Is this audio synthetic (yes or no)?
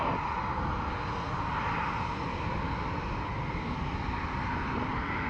no